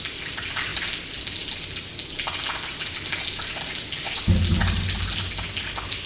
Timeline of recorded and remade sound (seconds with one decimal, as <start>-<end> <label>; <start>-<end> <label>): 0.0-6.1 recorded

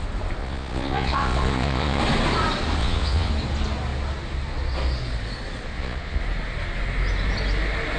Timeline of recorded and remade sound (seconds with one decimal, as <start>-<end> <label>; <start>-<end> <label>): 0.0-0.4 recorded; 0.4-2.0 remade; 2.0-2.8 recorded; 2.8-3.3 remade; 3.3-5.7 recorded; 5.7-6.2 remade; 6.2-8.0 recorded

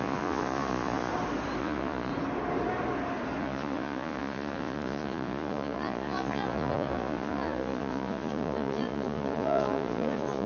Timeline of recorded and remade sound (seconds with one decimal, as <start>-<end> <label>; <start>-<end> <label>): 0.0-1.1 remade; 1.1-1.6 recorded; 1.6-2.1 remade; 2.1-3.4 recorded; 3.4-10.5 remade

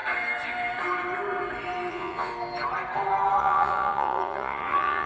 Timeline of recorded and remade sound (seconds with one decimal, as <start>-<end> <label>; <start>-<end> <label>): 0.0-1.9 recorded; 1.9-2.3 remade; 2.3-3.4 recorded; 3.4-5.1 remade

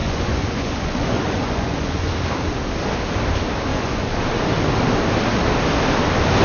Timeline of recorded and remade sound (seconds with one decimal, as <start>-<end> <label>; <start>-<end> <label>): 0.0-2.1 remade; 2.1-3.7 recorded; 3.7-4.2 remade; 4.2-6.4 recorded

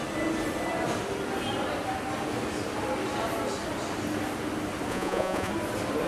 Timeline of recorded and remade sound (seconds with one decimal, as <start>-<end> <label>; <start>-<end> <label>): 0.0-4.9 recorded; 4.9-5.5 remade; 5.5-6.1 recorded